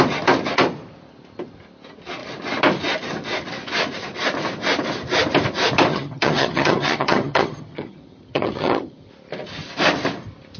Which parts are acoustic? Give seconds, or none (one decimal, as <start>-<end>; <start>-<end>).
0.0-5.9; 9.1-10.6